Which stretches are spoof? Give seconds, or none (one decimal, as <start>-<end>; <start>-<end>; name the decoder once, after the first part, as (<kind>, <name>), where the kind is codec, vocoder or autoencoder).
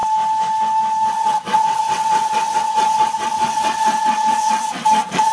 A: 1.1-5.3 (vocoder, WaveNeXt)